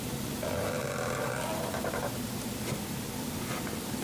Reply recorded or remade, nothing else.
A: recorded